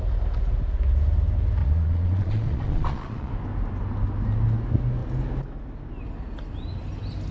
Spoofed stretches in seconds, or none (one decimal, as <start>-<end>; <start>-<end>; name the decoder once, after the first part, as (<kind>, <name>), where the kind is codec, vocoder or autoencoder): 1.6-3.3 (vocoder, Vocos)